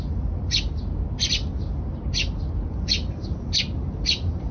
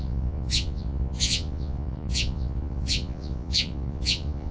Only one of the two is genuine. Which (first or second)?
first